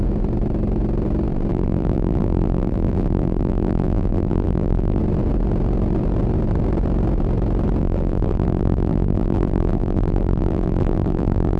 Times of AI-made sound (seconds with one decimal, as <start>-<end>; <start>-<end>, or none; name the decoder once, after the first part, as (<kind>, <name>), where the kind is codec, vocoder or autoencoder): 1.5-5.0 (vocoder, BigVGAN v2); 7.8-11.6